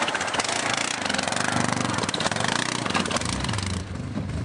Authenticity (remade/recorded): recorded